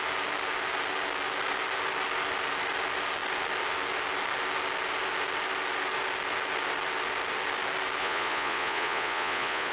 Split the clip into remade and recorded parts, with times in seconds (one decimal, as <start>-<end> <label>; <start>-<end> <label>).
0.0-8.0 recorded; 8.0-9.7 remade